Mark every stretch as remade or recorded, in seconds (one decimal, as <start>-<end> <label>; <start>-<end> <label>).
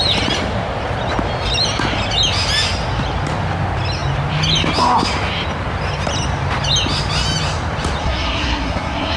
0.0-8.0 recorded; 8.0-9.2 remade